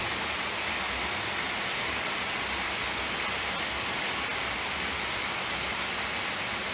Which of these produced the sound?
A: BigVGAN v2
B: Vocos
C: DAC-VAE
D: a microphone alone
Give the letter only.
D